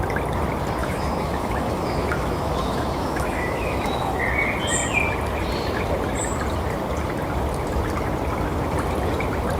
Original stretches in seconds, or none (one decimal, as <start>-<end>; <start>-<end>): 0.0-0.8; 4.2-9.6